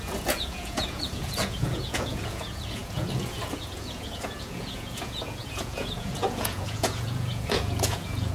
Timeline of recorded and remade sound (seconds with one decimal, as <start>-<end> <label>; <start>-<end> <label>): 0.0-8.3 remade